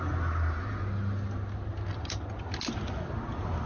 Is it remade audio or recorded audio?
recorded